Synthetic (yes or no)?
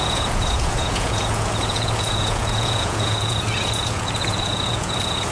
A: yes